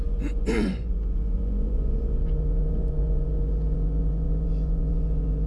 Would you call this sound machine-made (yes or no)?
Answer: yes